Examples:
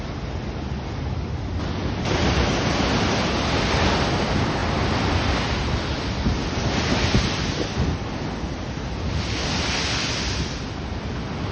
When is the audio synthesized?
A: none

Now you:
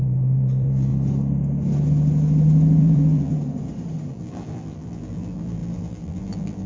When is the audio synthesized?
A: 0.0-0.9; 2.8-3.3; 4.1-6.7

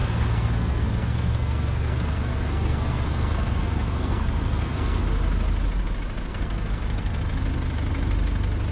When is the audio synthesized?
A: 0.0-5.0; 6.3-7.2

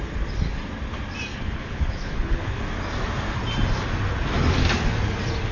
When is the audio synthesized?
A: 1.3-2.6

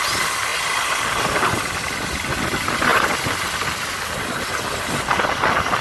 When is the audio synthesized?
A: none

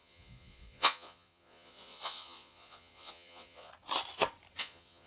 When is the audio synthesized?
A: 0.0-3.7; 4.6-5.1